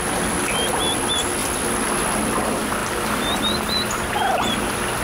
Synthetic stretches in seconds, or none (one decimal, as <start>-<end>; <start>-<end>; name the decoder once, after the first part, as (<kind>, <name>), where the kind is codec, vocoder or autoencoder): none